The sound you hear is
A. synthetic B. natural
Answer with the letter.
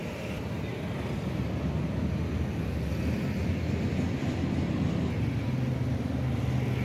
B